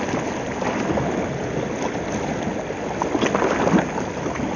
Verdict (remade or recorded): recorded